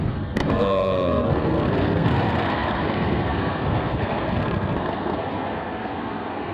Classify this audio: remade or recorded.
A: remade